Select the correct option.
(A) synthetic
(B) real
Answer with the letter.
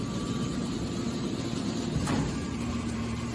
A